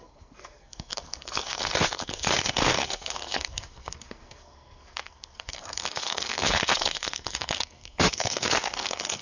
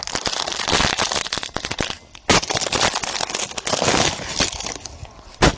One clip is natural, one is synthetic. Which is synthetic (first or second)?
first